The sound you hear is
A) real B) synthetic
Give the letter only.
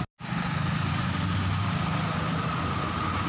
A